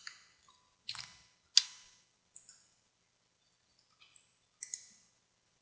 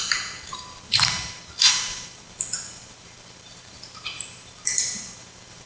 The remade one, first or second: second